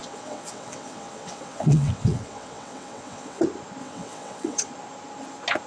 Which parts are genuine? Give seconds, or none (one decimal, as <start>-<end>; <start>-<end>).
3.4-3.8; 4.7-5.7